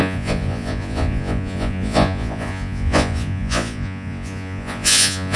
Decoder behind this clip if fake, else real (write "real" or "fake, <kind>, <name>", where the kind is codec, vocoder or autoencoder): fake, vocoder, Vocos